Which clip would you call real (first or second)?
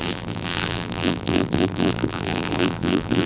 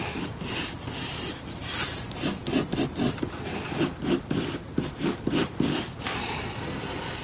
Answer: second